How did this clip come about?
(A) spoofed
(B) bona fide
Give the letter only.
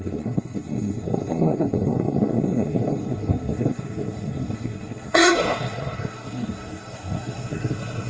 A